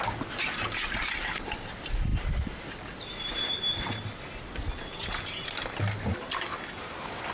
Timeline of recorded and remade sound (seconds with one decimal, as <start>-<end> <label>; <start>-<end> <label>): 0.0-7.3 recorded